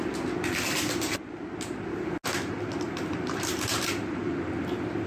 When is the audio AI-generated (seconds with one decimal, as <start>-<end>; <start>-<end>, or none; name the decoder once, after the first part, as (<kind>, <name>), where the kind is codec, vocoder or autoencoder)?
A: 3.1-4.2 (vocoder, BigVGAN v2)